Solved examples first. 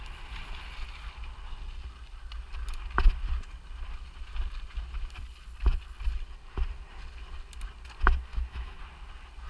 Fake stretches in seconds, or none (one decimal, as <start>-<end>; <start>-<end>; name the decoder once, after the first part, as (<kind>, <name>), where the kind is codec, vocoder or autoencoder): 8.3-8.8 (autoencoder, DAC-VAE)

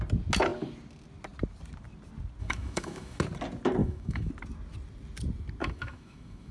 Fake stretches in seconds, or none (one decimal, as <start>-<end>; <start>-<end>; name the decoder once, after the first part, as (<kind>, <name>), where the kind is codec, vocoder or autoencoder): 2.4-3.2 (autoencoder, DAC-VAE); 3.8-4.3; 5.6-6.5

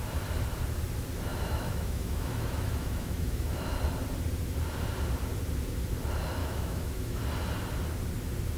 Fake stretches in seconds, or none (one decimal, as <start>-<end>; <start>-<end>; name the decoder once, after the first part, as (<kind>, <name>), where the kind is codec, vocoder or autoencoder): 1.3-3.7 (autoencoder, DAC-VAE); 6.4-7.2